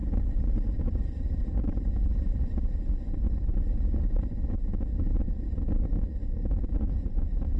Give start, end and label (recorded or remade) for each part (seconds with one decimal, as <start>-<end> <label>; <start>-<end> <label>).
0.0-2.7 remade; 2.7-3.5 recorded; 3.5-4.9 remade; 4.9-6.7 recorded; 6.7-7.6 remade